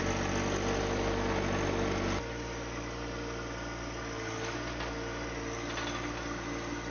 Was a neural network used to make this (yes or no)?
no